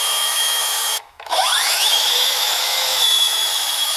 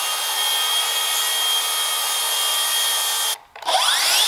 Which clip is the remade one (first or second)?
first